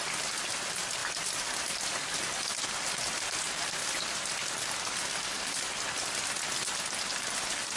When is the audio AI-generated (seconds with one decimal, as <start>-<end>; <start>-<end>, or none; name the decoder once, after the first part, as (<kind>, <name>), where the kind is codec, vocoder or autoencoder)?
none